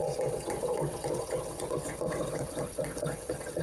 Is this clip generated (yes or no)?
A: yes